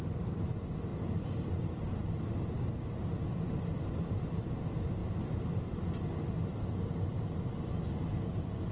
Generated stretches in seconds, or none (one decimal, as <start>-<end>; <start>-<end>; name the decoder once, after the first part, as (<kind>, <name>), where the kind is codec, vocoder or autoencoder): 0.9-4.2 (vocoder, BigVGAN v2); 5.0-5.9